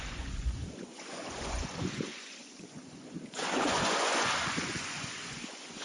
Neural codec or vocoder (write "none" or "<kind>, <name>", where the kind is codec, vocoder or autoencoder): vocoder, Vocos